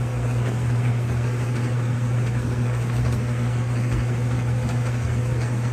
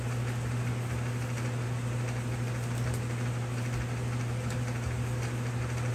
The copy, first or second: first